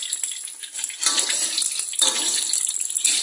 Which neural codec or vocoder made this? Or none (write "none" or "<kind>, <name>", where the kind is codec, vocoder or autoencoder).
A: none